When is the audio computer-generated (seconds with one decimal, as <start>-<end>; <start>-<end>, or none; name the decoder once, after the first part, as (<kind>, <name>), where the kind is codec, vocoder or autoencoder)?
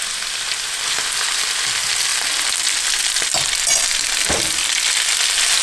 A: none